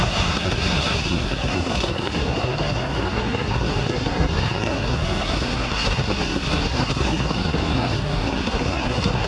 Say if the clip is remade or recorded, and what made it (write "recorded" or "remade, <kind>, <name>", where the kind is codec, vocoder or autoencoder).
remade, codec, SNAC